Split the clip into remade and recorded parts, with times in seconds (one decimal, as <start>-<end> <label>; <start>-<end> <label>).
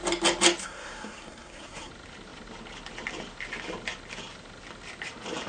0.0-0.6 recorded; 0.6-1.9 remade; 1.9-5.5 recorded